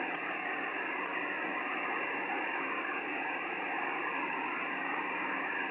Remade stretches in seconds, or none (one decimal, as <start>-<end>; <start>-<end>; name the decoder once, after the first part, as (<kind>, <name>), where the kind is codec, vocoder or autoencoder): none